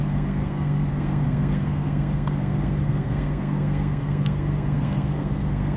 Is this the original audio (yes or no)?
no